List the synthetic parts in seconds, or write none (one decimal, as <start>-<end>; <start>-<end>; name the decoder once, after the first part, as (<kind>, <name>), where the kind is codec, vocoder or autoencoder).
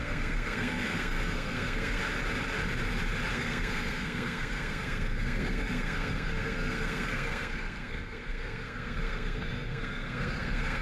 0.0-2.0 (codec, SNAC); 3.3-10.8